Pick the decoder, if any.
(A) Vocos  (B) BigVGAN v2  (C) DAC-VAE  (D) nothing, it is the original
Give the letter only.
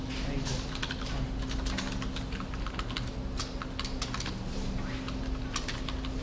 D